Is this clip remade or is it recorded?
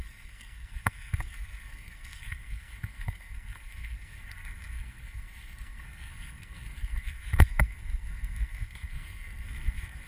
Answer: remade